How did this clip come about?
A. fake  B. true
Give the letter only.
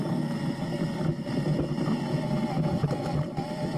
B